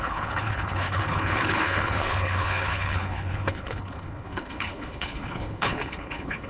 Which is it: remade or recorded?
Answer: remade